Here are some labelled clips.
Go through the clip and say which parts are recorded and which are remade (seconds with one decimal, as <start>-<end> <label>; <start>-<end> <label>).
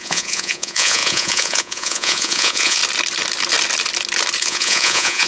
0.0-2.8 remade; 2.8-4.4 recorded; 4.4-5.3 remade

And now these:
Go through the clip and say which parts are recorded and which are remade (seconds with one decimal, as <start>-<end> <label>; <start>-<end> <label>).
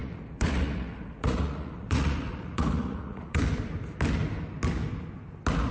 0.0-3.4 remade; 3.4-5.7 recorded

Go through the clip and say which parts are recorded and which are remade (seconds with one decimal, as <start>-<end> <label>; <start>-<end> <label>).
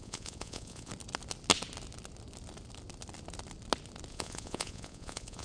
0.0-0.9 remade; 0.9-4.1 recorded; 4.1-5.4 remade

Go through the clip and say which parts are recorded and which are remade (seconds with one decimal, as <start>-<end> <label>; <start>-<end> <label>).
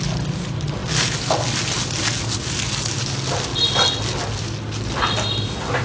0.0-5.8 recorded